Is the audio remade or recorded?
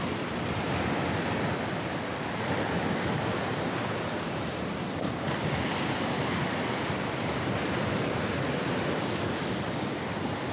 recorded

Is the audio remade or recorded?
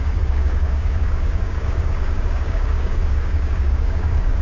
remade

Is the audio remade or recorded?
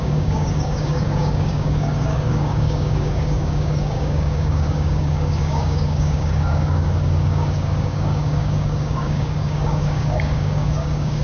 remade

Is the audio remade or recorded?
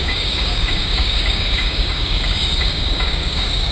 remade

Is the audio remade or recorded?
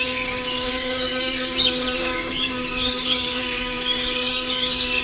remade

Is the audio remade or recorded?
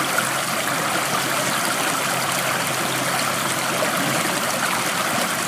recorded